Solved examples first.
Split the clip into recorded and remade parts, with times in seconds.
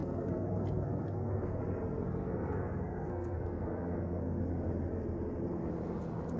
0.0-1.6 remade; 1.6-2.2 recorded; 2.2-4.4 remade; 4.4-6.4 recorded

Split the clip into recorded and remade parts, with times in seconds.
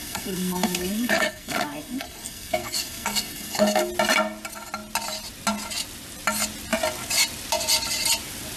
0.0-3.9 remade; 3.9-8.6 recorded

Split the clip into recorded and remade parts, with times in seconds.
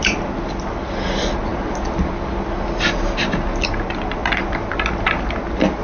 0.0-5.8 recorded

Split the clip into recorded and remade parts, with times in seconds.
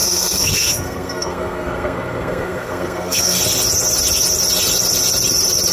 0.0-3.4 remade; 3.4-5.7 recorded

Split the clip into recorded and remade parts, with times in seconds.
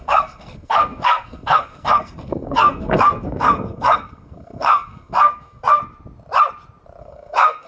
0.0-5.8 remade; 5.8-7.0 recorded; 7.0-7.7 remade